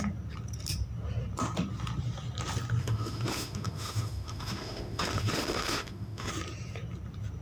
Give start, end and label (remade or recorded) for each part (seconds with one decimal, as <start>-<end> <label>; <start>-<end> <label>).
0.0-2.8 recorded; 2.8-6.3 remade; 6.3-7.4 recorded

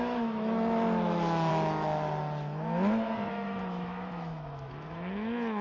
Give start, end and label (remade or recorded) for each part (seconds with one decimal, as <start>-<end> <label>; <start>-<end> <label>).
0.0-1.5 remade; 1.5-3.3 recorded; 3.3-5.6 remade